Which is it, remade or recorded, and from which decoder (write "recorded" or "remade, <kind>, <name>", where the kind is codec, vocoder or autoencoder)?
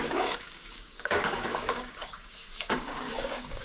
remade, codec, DAC